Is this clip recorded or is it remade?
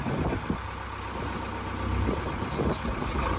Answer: recorded